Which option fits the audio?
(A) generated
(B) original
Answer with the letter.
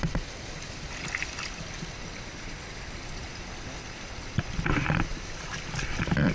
B